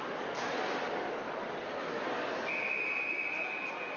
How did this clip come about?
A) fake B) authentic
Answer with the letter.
B